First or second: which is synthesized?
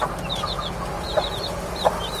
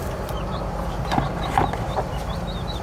second